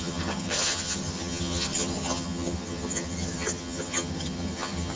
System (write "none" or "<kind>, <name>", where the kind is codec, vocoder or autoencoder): vocoder, HiFi-GAN